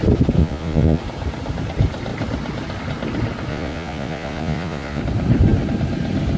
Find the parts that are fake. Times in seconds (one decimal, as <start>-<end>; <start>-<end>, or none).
0.4-1.0; 3.5-5.0